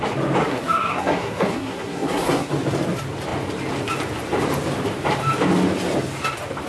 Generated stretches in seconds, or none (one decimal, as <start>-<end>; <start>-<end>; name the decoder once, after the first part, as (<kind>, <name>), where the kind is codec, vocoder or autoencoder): 0.4-2.5 (codec, SNAC)